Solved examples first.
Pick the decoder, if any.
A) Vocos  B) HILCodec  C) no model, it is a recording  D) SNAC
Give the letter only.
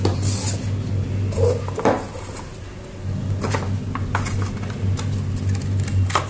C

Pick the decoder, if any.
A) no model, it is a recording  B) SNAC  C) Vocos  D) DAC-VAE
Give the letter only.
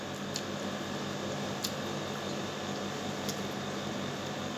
A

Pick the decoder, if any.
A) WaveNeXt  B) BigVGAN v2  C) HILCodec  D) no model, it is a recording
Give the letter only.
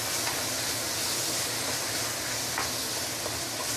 D